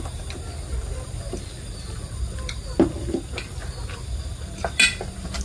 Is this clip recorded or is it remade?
recorded